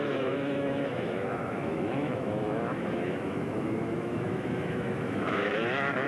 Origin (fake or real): fake